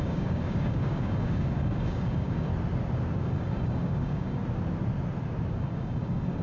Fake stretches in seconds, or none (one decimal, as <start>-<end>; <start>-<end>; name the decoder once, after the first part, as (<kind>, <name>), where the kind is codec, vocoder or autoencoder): 0.0-2.5 (codec, DAC); 3.2-4.4; 5.5-6.4